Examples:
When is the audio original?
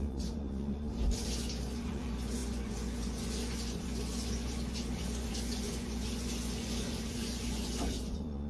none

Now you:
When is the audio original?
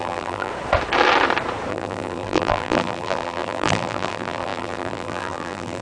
0.5-1.7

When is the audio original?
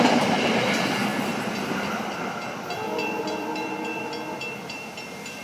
none